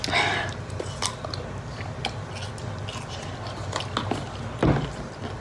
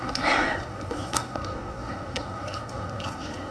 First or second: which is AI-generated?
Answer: second